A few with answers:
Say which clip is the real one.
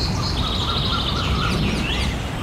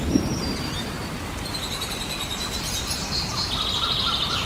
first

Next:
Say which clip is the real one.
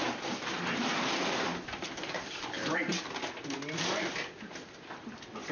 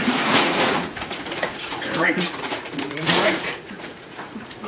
first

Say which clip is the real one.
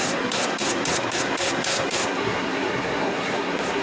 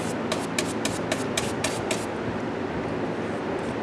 second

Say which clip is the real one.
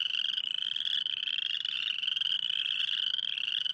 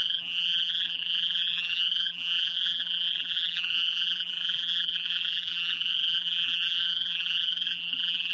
first